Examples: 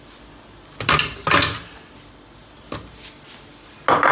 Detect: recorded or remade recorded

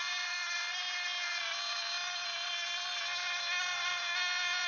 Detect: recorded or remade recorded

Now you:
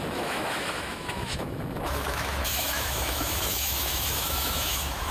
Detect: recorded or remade remade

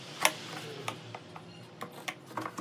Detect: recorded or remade recorded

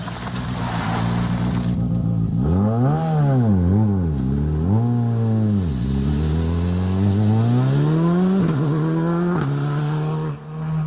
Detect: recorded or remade recorded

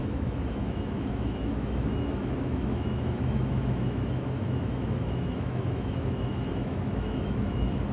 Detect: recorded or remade remade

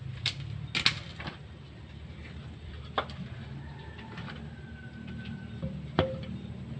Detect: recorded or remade recorded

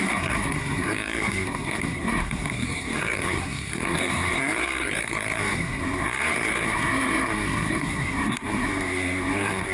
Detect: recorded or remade remade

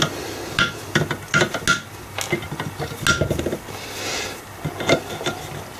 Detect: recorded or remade recorded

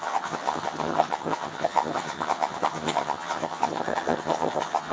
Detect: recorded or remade remade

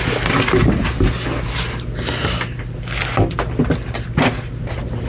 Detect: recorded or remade recorded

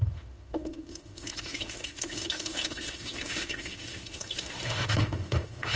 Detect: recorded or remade remade